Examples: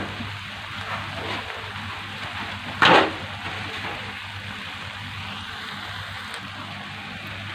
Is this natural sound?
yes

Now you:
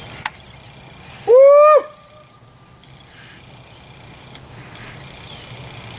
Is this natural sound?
yes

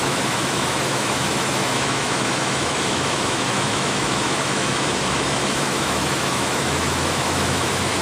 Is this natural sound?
no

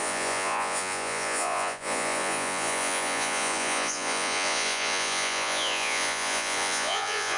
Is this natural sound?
no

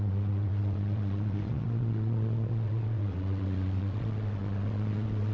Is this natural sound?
no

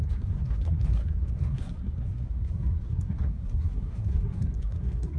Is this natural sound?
no